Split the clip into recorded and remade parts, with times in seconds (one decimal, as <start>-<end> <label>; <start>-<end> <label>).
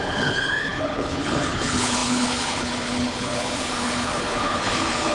0.0-5.1 remade